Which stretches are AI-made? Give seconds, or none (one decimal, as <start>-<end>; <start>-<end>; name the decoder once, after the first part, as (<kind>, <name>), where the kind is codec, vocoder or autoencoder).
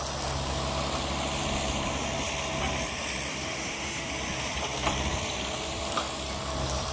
3.3-4.1 (autoencoder, DAC-VAE)